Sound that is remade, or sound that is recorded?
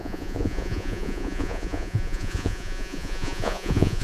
remade